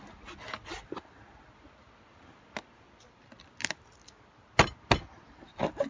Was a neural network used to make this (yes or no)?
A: no